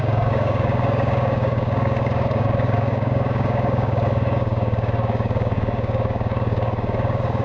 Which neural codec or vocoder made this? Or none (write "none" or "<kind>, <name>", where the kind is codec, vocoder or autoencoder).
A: codec, DAC